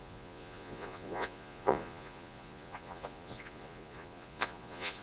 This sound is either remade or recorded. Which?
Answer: remade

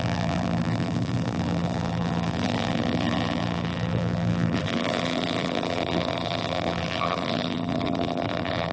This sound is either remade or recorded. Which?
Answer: remade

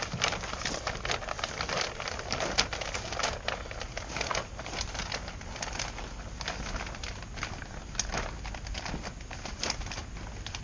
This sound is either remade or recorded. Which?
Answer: recorded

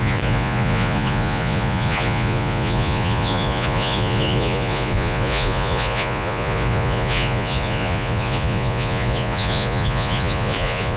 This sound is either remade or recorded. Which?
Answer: remade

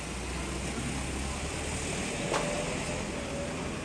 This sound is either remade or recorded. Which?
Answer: recorded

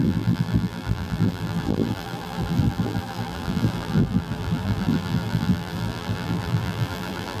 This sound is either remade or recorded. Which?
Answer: remade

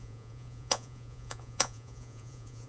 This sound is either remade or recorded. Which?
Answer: remade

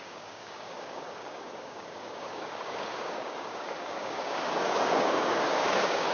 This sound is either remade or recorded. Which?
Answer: remade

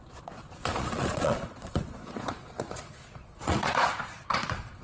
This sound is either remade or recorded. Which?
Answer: remade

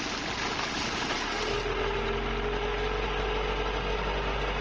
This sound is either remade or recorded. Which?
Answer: recorded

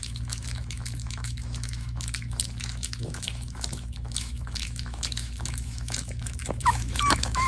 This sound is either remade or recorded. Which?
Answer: remade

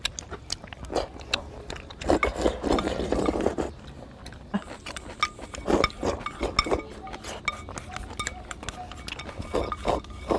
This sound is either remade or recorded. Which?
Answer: recorded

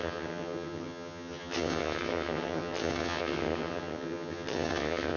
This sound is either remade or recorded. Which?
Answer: remade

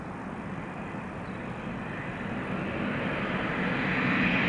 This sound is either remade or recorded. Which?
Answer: recorded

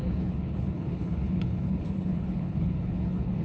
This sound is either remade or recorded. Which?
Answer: remade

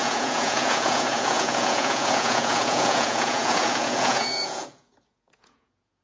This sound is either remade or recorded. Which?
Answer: remade